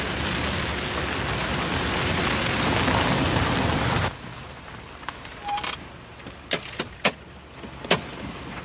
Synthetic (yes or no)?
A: no